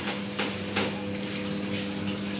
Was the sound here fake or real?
real